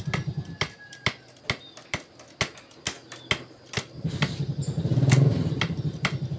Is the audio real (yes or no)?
yes